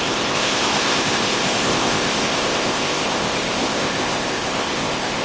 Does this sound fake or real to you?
fake